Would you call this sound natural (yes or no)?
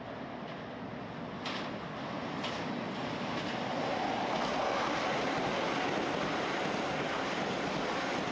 yes